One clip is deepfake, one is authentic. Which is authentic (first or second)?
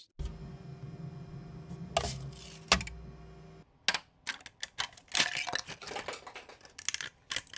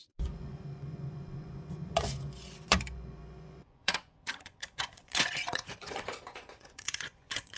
first